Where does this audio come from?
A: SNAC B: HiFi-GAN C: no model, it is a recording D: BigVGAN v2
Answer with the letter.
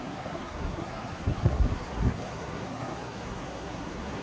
A